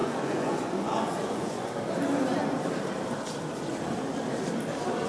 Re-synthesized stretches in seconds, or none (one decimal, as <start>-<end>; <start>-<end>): 0.0-1.7